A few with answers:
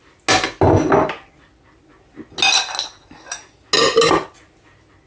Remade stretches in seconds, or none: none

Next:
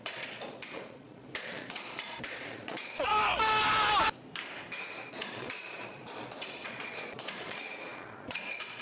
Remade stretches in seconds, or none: 0.0-3.1 (vocoder, Vocos); 5.1-8.8

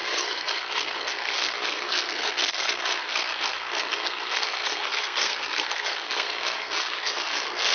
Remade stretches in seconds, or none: 0.0-7.7 (codec, SNAC)

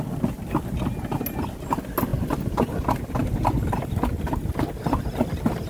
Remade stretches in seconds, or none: none

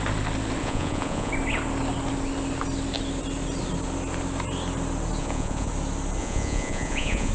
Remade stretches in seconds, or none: 0.6-1.3 (vocoder, Vocos); 5.2-5.7; 6.2-7.3

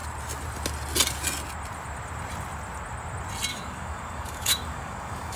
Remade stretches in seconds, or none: 3.5-5.4 (codec, DAC)